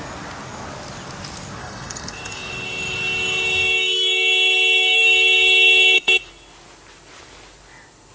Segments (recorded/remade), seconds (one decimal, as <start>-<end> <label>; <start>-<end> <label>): 0.0-1.6 recorded; 1.6-6.3 remade; 6.3-8.1 recorded